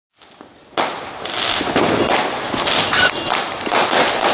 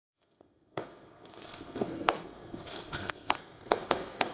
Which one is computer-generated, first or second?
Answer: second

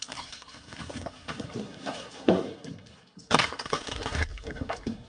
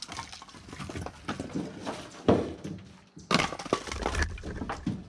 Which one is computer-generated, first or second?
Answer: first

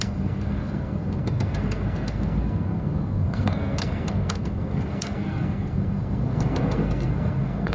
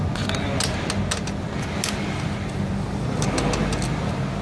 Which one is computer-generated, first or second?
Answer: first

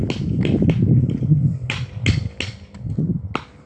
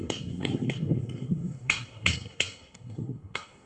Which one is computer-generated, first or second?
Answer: second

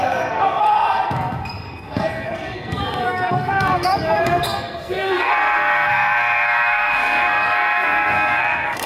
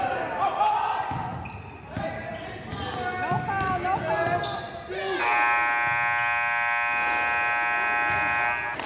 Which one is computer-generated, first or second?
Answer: first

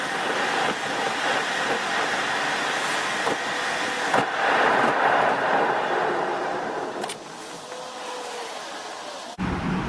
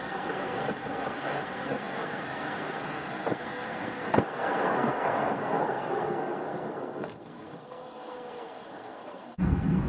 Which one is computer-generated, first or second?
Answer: second